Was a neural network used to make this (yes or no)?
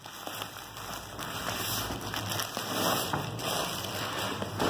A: no